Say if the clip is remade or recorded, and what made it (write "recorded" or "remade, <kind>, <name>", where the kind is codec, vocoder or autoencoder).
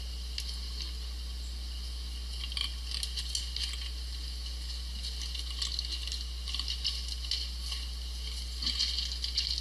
recorded